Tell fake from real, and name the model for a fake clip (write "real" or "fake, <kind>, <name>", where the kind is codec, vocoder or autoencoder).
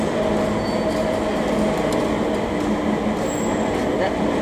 real